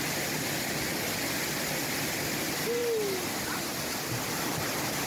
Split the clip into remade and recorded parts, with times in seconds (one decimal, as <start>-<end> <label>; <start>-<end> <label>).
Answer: 0.0-5.1 recorded